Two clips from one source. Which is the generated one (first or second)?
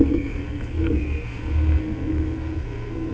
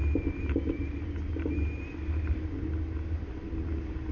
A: first